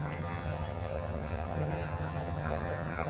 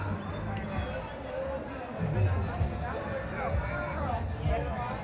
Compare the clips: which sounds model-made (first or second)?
first